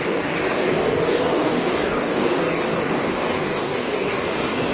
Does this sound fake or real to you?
fake